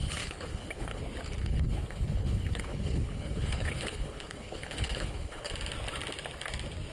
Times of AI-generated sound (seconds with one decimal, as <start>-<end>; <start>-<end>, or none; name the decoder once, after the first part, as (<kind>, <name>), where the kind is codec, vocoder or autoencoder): 0.0-1.0 (codec, HILCodec); 1.4-5.5